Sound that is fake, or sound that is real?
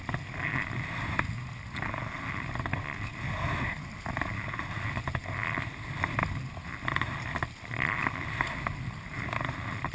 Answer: real